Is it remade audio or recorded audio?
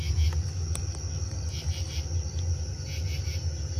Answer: recorded